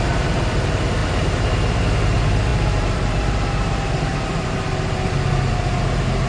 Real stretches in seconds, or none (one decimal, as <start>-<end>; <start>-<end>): 4.1-5.7